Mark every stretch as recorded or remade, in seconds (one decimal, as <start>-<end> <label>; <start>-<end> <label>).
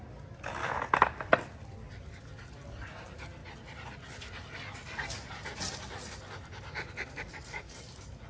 0.0-0.6 recorded; 0.6-1.3 remade; 1.3-8.3 recorded